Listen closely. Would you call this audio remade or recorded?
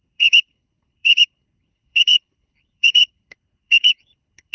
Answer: remade